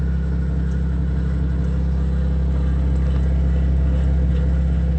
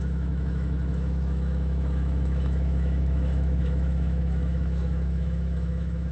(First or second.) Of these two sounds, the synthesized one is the second